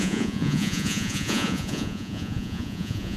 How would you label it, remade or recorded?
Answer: remade